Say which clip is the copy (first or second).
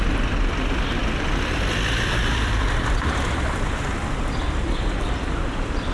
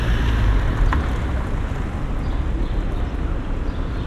first